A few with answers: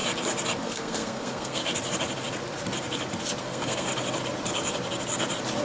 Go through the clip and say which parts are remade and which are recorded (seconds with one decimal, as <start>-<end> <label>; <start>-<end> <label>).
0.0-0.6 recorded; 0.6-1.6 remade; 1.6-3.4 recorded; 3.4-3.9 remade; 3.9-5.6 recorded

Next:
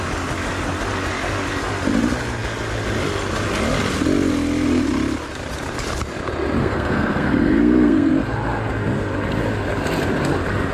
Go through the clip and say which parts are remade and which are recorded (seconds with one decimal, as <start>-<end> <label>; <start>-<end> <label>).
0.0-6.6 recorded; 6.6-8.1 remade; 8.1-10.7 recorded

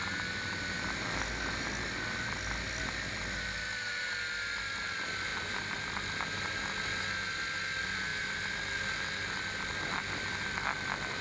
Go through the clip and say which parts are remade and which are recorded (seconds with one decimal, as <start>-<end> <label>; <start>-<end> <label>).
0.0-11.2 recorded

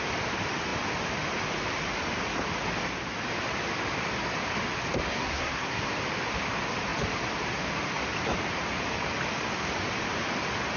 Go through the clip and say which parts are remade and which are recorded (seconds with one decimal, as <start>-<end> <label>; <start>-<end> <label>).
0.0-5.1 recorded; 5.1-5.8 remade; 5.8-10.8 recorded

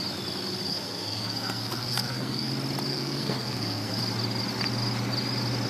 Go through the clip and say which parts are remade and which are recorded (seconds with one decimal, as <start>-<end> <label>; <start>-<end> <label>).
0.0-0.7 recorded; 0.7-2.5 remade; 2.5-2.9 recorded; 2.9-4.0 remade; 4.0-5.7 recorded